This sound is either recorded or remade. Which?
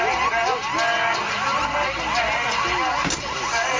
recorded